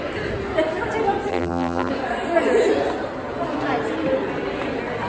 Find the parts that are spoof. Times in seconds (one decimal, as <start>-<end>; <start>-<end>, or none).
1.3-1.9